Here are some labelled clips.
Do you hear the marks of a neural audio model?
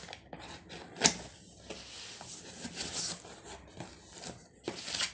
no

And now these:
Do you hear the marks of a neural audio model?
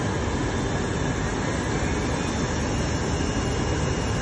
no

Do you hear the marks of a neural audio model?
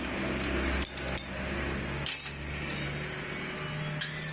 no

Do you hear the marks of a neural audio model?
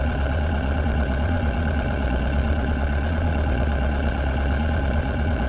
yes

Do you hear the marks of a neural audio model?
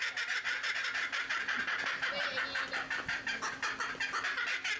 no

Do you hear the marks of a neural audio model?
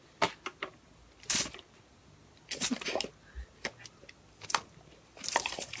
no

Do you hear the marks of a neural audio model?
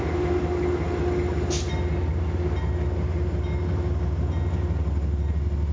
no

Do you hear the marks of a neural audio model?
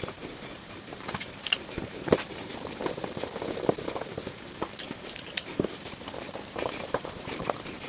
yes